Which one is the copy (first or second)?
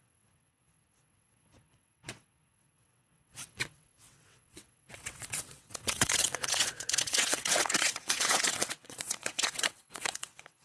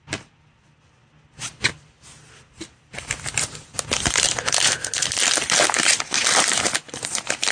first